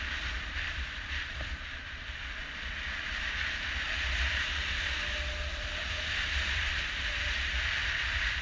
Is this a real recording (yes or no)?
no